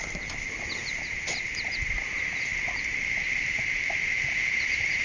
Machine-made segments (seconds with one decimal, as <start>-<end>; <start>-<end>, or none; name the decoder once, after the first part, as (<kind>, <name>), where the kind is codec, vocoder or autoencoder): none